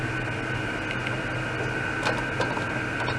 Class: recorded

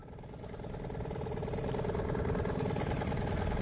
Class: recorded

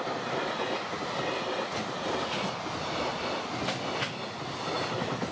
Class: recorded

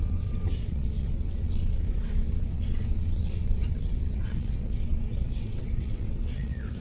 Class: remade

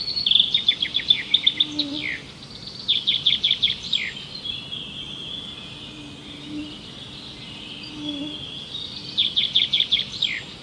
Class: recorded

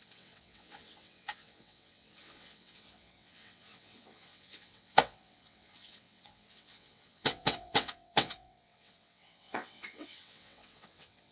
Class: remade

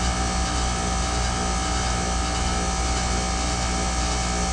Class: recorded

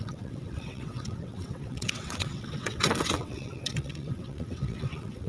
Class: remade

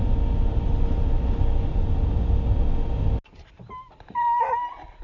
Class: recorded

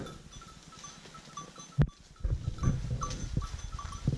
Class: recorded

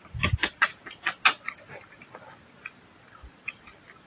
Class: recorded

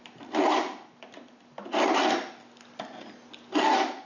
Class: recorded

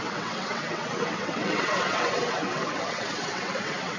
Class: remade